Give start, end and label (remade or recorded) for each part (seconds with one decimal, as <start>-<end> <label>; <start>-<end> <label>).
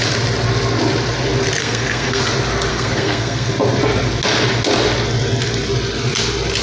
0.0-1.6 recorded; 1.6-2.2 remade; 2.2-2.7 recorded; 2.7-3.5 remade; 3.5-6.6 recorded